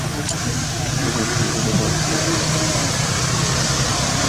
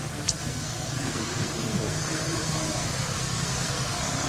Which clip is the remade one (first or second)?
second